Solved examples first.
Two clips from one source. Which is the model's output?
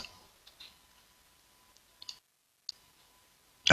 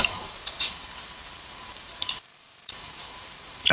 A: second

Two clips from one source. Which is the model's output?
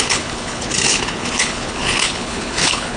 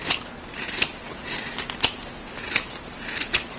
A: first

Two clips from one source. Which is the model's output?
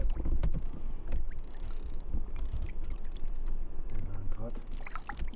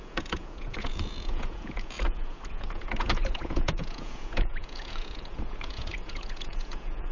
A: second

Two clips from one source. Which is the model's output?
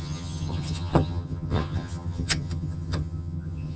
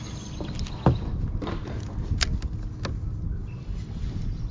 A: first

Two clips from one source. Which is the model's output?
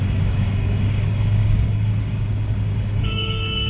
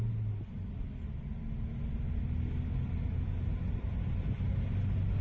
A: first